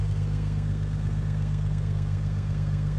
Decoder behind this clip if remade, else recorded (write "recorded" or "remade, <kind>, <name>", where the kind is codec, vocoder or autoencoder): remade, codec, SNAC